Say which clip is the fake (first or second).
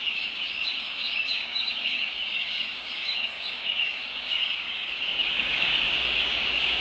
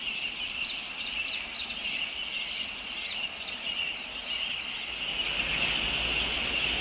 first